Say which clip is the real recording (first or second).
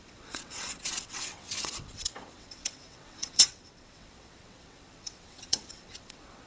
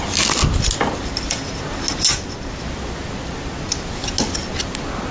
second